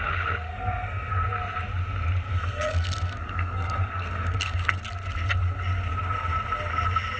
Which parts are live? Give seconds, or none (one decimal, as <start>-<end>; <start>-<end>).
0.0-0.5; 1.1-2.3; 4.8-7.2